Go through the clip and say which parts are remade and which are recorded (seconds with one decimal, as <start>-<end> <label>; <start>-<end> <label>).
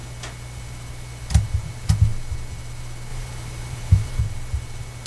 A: 0.0-3.1 recorded; 3.1-4.2 remade; 4.2-5.1 recorded